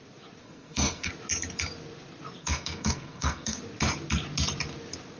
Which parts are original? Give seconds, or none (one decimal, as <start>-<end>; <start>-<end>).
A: 0.0-0.4; 1.1-2.4; 3.6-5.2